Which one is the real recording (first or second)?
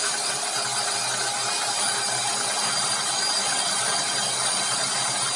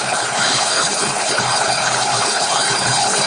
first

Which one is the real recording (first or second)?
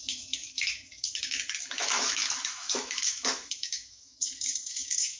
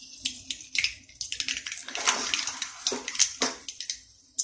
second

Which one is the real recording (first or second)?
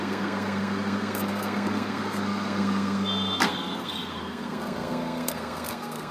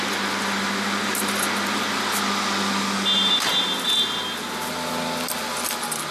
second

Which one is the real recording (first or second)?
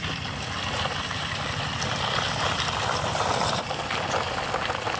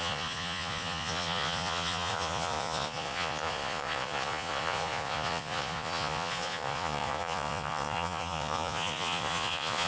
first